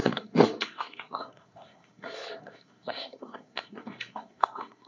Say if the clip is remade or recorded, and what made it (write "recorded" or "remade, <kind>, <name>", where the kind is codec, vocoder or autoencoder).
remade, codec, SNAC